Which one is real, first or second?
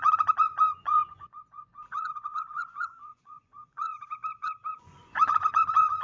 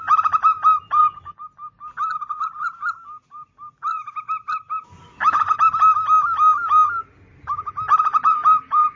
second